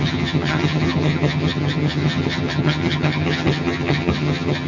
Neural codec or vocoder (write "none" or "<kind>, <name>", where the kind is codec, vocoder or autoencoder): vocoder, HiFi-GAN